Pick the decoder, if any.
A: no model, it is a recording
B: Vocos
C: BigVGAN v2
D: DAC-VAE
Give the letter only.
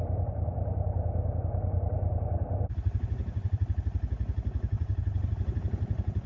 A